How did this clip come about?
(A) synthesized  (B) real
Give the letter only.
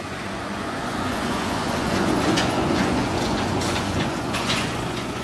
A